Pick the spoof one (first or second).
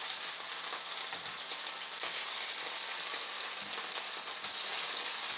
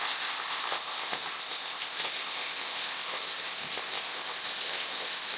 second